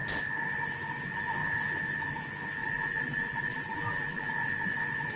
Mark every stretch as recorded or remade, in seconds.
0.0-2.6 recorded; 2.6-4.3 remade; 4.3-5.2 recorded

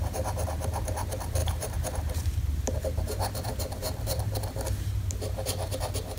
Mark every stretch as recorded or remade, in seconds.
0.0-6.2 remade